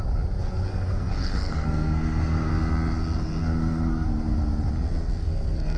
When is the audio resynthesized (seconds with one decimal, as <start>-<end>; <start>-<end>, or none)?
0.7-2.5; 3.4-4.1; 5.2-5.8